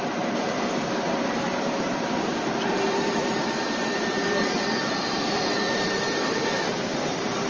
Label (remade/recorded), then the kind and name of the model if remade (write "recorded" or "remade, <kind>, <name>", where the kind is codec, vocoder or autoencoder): remade, vocoder, BigVGAN v2